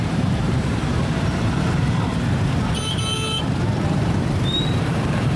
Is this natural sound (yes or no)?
no